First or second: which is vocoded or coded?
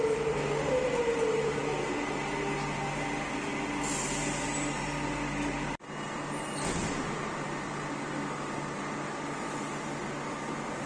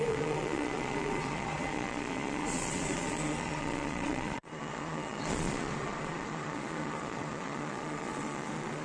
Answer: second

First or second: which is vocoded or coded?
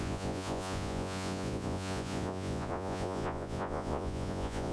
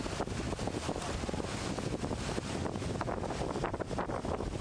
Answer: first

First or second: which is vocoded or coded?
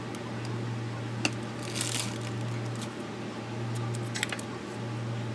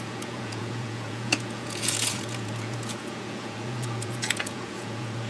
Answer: second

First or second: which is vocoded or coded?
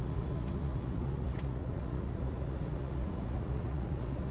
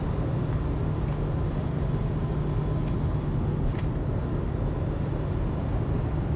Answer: first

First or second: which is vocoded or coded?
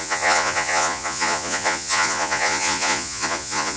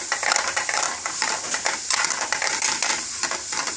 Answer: first